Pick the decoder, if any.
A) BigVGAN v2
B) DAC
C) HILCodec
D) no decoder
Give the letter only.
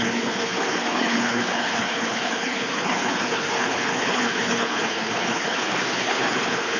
C